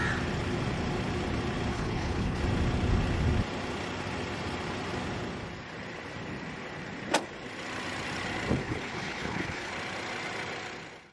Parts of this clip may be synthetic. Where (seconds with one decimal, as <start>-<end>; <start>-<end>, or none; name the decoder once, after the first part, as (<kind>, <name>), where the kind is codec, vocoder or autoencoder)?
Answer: 1.7-2.4 (codec, HILCodec); 8.6-9.7

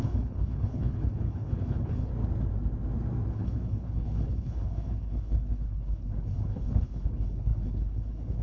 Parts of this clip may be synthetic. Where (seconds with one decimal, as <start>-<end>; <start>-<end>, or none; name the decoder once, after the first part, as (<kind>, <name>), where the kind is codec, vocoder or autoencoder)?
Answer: 0.0-2.1 (codec, HILCodec); 3.3-8.4

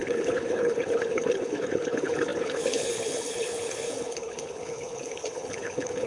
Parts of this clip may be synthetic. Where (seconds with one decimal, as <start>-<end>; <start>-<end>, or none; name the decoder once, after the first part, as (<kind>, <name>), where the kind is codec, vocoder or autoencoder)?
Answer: 0.0-6.1 (codec, HILCodec)

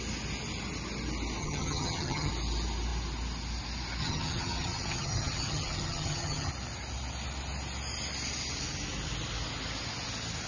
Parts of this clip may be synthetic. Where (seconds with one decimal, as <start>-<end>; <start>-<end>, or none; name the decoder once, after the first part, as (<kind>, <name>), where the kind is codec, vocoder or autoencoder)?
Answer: 1.4-2.3 (vocoder, HiFi-GAN); 4.0-6.5

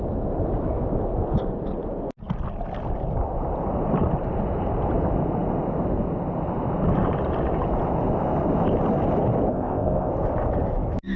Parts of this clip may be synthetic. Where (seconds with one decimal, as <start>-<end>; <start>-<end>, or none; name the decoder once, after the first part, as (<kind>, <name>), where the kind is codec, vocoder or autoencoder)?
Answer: 9.5-10.1 (codec, ZipCodec)